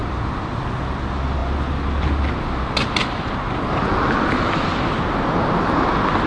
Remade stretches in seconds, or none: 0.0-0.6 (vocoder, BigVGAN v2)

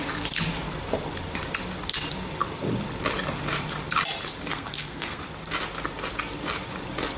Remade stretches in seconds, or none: 4.5-5.2 (codec, SNAC)